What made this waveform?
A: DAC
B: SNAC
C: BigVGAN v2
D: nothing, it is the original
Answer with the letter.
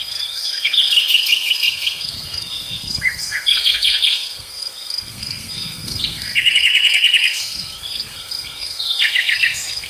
B